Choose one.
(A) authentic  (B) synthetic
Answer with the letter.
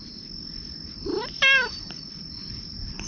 A